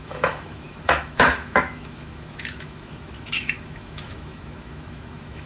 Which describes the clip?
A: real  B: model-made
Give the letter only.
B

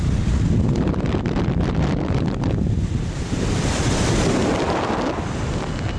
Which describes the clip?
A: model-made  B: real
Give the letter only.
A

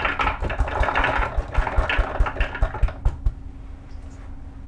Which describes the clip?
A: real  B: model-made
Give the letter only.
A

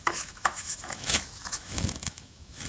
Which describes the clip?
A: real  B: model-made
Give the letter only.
B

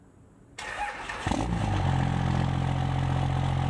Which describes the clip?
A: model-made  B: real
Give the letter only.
B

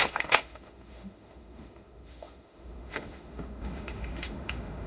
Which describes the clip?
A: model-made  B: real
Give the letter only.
A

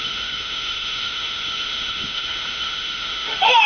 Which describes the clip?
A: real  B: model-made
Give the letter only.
B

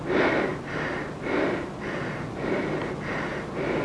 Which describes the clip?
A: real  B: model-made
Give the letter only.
A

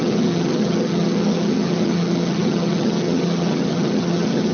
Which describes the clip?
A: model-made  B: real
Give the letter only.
A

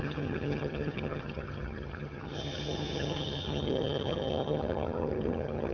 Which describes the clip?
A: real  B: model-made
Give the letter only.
B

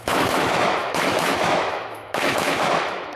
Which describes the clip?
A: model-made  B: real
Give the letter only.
A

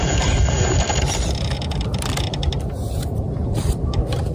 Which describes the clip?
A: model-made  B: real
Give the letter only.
B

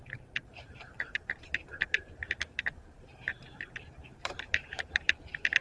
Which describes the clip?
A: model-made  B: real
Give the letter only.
A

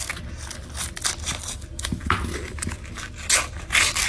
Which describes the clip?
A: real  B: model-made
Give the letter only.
A